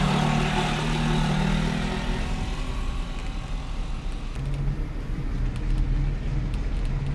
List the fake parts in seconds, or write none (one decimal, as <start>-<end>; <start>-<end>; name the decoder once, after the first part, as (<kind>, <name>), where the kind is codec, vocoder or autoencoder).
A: none